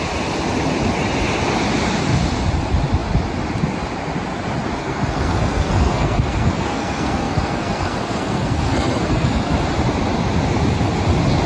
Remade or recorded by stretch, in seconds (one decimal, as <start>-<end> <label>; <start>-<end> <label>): 0.0-4.8 recorded; 4.8-9.5 remade; 9.5-11.5 recorded